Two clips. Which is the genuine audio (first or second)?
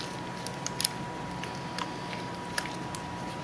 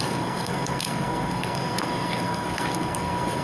first